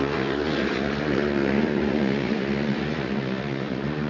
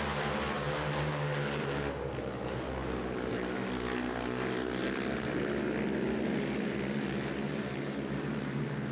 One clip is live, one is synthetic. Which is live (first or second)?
second